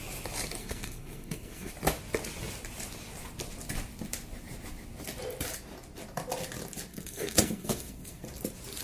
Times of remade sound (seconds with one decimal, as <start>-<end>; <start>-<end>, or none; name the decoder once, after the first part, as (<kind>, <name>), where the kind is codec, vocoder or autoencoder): 0.6-1.7 (codec, SNAC); 6.9-8.2